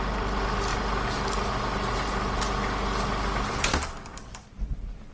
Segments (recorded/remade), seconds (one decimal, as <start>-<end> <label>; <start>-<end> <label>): 0.0-5.1 recorded